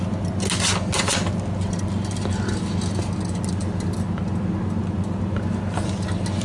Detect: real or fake real